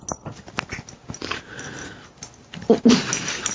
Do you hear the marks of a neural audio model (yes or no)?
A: no